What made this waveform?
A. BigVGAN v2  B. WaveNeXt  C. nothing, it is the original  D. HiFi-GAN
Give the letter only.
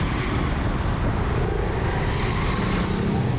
C